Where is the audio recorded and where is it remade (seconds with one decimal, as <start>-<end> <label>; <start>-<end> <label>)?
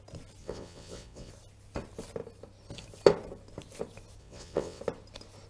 0.0-0.4 recorded; 0.4-1.3 remade; 1.3-4.2 recorded; 4.2-4.8 remade; 4.8-5.5 recorded